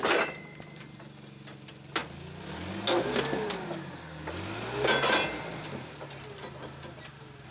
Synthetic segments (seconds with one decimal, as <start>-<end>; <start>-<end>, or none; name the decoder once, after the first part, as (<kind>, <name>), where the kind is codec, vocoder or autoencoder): none